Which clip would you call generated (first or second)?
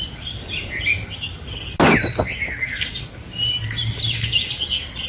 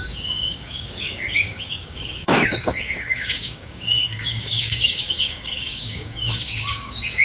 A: second